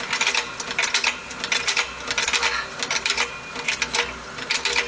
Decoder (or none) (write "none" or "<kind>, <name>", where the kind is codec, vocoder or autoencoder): none